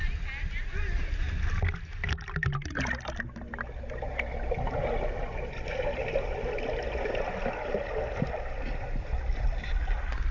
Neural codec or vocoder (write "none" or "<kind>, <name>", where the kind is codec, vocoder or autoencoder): none